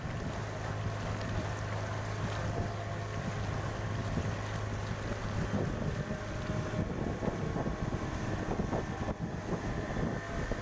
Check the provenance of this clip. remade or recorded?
recorded